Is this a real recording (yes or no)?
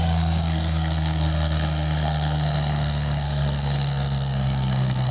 no